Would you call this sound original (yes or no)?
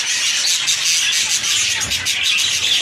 yes